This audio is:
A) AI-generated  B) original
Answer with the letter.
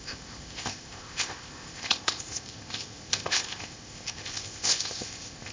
A